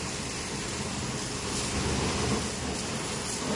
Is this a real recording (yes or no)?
yes